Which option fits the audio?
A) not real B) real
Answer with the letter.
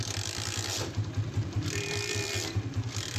A